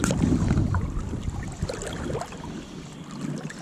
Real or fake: real